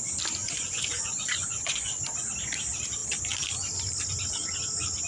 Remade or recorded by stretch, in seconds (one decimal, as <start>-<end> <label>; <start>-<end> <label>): 0.0-0.4 recorded; 0.4-2.0 remade; 2.0-5.1 recorded